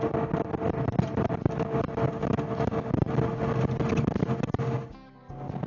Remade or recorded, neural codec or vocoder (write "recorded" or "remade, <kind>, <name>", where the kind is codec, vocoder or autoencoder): recorded